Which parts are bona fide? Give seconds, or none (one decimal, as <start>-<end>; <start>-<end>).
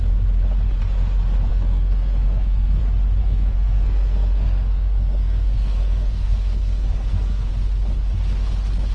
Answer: 0.0-1.5; 2.8-3.2; 7.5-8.9